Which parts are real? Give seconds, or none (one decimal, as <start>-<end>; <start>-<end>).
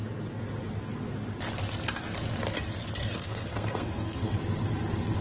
0.0-3.0; 4.4-5.2